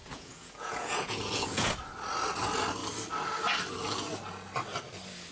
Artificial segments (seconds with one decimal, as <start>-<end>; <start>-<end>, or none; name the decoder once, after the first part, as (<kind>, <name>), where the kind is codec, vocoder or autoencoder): 0.0-1.7 (vocoder, Vocos)